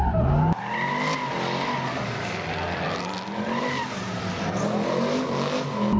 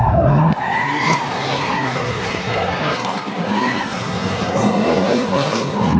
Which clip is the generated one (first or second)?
second